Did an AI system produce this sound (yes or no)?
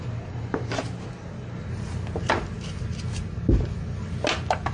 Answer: no